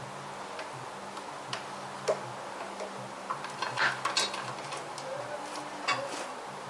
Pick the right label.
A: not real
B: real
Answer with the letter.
B